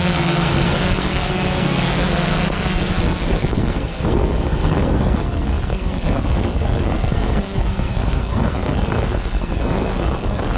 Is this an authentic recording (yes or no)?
no